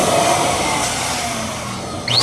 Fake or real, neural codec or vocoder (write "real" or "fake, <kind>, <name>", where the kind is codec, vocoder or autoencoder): real